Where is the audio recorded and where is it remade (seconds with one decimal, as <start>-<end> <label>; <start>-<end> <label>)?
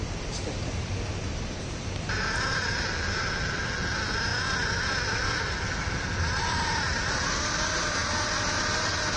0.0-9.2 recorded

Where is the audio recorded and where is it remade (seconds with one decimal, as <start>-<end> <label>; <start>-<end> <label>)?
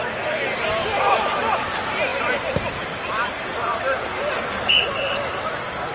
0.0-5.9 recorded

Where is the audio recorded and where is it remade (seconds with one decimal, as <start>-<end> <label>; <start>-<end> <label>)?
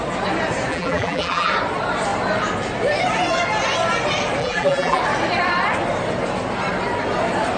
0.0-0.7 recorded; 0.7-1.5 remade; 1.5-4.4 recorded; 4.4-5.0 remade; 5.0-7.6 recorded